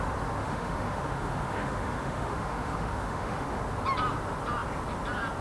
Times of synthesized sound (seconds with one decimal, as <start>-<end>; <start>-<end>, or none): 0.4-3.6